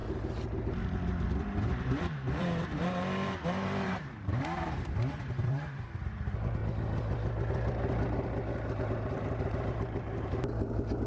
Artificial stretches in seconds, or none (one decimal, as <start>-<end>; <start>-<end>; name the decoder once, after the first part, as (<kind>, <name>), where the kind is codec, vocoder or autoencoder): 1.4-6.6 (vocoder, BigVGAN v2); 8.9-11.1